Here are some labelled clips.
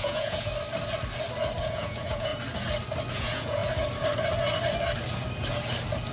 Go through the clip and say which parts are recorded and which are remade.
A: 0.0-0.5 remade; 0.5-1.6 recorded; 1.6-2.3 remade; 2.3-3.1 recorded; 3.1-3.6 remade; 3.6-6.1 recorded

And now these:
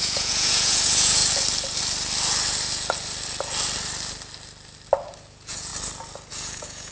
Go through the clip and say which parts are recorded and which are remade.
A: 0.0-1.2 remade; 1.2-5.3 recorded; 5.3-5.7 remade; 5.7-6.3 recorded; 6.3-6.9 remade

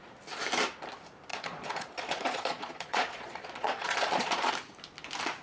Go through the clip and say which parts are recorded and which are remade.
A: 0.0-1.3 recorded; 1.3-4.5 remade; 4.5-5.4 recorded

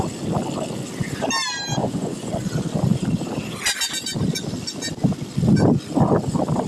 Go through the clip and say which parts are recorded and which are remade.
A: 0.0-1.8 recorded; 1.8-2.3 remade; 2.3-6.7 recorded